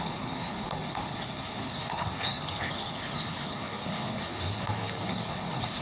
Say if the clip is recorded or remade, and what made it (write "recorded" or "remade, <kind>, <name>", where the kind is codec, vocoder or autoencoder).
remade, codec, HILCodec